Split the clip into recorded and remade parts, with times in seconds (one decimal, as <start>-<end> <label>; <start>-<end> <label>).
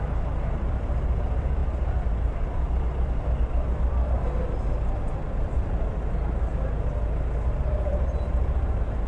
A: 0.0-9.1 recorded